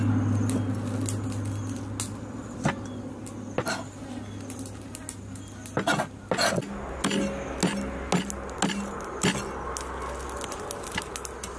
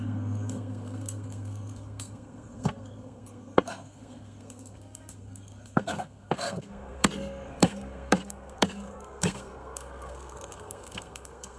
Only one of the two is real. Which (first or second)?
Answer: first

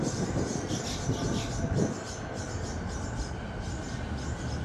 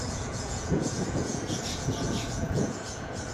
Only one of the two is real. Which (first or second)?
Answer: first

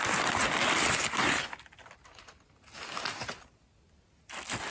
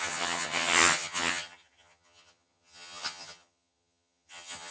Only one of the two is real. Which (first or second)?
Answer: first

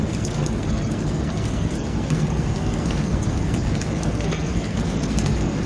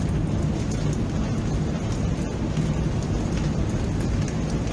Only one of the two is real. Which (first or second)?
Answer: second